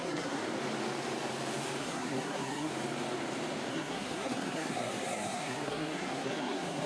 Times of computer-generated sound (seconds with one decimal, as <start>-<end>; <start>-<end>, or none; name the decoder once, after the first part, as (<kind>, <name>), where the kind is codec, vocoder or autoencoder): 0.0-0.4 (codec, SNAC); 1.8-2.7; 3.7-6.9